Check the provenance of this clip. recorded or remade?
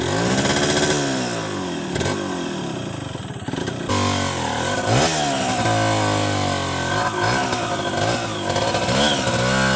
recorded